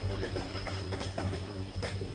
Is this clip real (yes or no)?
no